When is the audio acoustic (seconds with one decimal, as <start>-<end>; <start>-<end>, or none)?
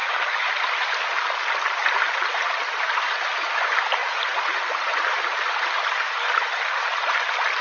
0.5-7.6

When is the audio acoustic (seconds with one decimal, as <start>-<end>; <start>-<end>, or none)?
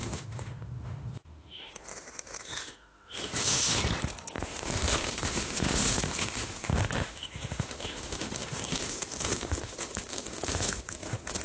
3.8-4.4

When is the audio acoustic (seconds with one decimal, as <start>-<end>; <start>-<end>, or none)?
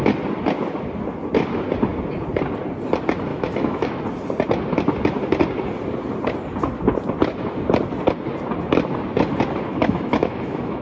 0.0-3.3; 4.0-9.7